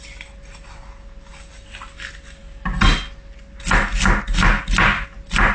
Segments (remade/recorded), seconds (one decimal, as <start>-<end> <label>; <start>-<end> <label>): 0.0-5.5 recorded